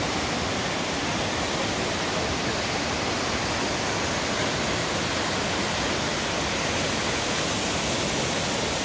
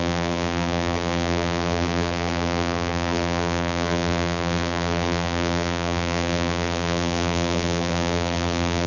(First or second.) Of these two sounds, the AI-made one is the second